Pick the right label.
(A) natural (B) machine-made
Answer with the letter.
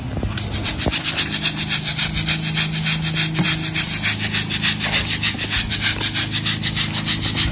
A